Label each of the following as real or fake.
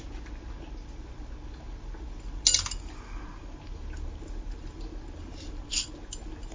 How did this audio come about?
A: real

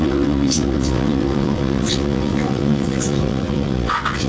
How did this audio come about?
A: fake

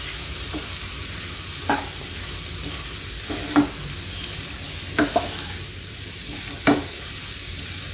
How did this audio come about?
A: real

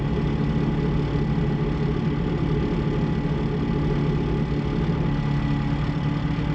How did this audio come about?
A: real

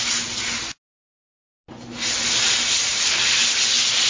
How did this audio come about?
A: real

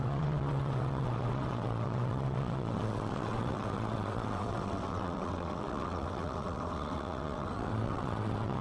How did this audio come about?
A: fake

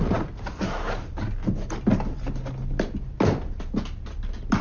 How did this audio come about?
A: real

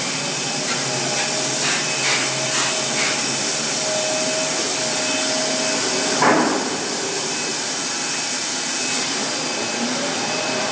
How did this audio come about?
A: real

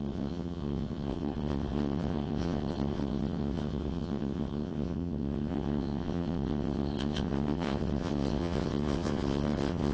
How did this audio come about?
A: fake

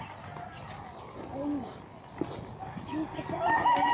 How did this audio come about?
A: real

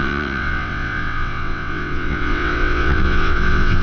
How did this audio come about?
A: fake